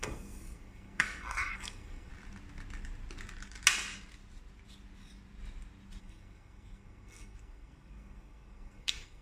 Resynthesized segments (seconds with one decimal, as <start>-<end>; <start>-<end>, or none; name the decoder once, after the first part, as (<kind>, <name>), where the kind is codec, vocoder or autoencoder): 0.0-2.1 (codec, SNAC); 6.0-9.2

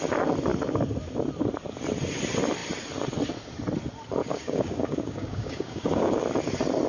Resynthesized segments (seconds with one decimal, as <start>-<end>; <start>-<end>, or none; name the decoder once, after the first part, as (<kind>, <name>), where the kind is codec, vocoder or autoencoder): 4.2-6.2 (codec, DAC)

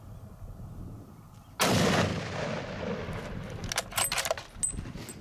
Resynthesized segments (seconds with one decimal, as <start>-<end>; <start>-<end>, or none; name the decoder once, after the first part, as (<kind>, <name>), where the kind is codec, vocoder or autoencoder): none

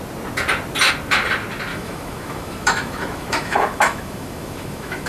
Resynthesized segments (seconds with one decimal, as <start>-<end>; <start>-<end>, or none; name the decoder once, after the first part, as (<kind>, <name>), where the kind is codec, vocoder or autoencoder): 1.7-5.1 (autoencoder, DAC-VAE)